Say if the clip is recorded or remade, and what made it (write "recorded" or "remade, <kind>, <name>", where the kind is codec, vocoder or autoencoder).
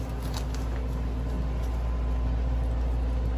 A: recorded